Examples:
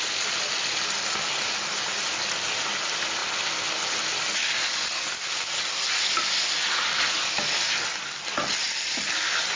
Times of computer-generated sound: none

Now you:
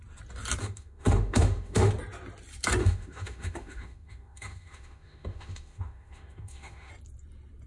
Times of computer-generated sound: 0.6-1.9 (autoencoder, DAC-VAE); 2.8-6.9

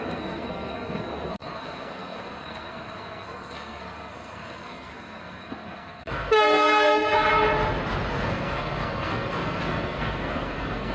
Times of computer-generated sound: 0.0-7.3 (codec, SNAC); 8.1-10.9